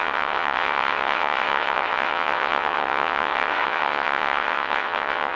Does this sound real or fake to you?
fake